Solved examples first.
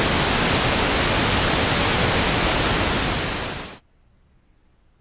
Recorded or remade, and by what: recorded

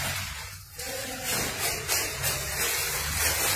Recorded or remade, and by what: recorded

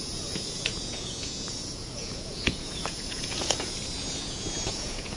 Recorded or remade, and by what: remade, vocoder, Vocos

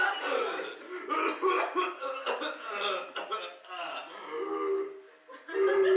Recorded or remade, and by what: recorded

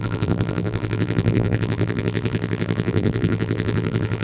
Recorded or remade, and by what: remade, vocoder, BigVGAN v2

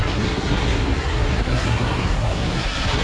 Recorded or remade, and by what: remade, codec, SNAC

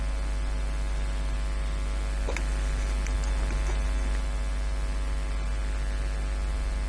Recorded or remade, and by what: recorded